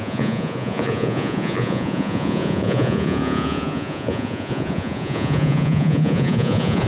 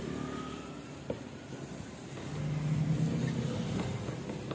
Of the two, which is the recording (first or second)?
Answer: second